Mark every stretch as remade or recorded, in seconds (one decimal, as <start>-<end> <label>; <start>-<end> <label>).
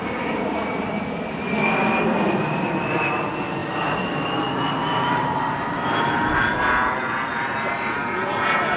0.0-8.8 recorded